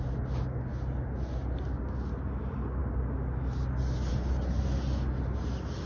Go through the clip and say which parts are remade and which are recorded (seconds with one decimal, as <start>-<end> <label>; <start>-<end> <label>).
0.0-5.9 recorded